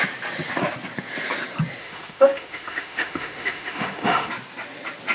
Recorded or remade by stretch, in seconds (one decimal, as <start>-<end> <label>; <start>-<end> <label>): 0.0-1.8 recorded; 1.8-4.3 remade; 4.3-5.1 recorded